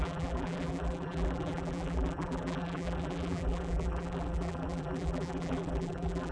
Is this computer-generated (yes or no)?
yes